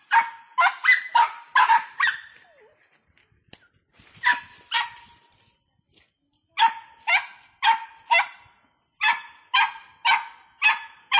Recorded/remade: recorded